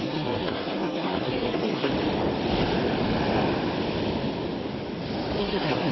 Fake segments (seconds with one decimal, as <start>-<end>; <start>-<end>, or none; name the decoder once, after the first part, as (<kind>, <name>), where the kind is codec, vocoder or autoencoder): 0.0-1.9 (codec, SNAC); 5.4-5.9